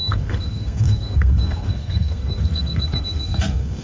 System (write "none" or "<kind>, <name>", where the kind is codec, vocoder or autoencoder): codec, SNAC